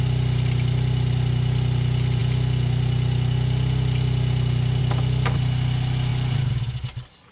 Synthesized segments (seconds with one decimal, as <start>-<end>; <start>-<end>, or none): none